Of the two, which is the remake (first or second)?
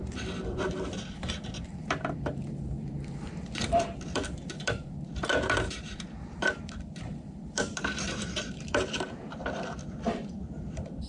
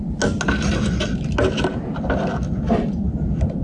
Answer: first